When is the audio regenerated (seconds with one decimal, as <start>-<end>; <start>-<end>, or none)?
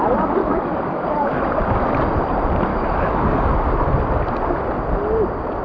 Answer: 0.4-1.4; 2.7-3.5